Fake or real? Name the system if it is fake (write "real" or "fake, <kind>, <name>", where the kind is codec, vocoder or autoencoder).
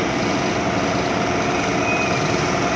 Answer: real